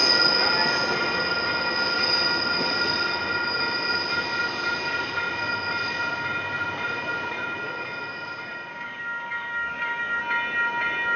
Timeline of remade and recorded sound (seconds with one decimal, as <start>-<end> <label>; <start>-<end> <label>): 0.0-8.7 recorded; 8.7-10.2 remade; 10.2-11.2 recorded